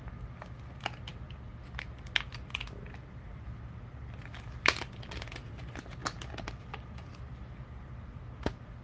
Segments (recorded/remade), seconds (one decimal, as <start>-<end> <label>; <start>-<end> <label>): 0.0-8.8 recorded